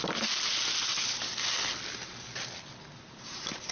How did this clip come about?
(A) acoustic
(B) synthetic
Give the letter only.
A